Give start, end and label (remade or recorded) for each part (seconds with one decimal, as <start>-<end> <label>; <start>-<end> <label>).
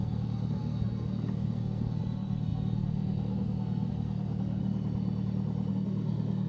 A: 0.0-4.6 remade; 4.6-5.7 recorded; 5.7-6.5 remade